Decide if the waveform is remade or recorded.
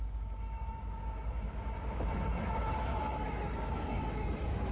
remade